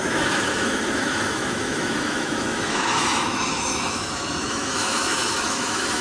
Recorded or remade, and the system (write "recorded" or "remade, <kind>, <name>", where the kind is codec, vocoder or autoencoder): remade, autoencoder, DAC-VAE